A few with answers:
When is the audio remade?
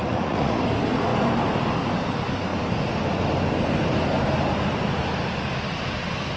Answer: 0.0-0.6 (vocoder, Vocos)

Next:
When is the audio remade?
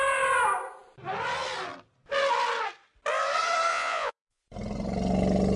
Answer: 3.7-4.4 (vocoder, Vocos)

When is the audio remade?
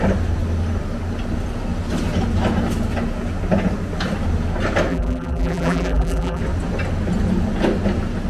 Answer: 4.9-6.4 (vocoder, BigVGAN v2)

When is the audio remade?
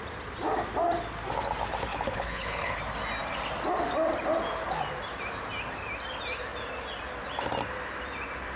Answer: 1.9-2.8 (codec, HILCodec)